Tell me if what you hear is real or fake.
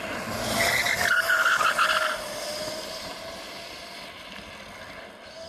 real